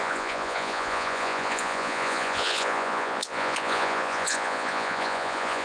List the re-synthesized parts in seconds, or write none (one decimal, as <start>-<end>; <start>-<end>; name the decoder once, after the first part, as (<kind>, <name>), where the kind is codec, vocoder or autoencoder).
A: 0.0-5.6 (vocoder, Vocos)